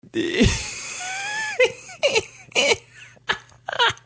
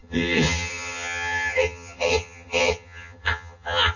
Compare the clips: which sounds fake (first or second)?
second